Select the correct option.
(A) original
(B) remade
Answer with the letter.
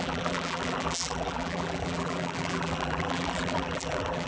B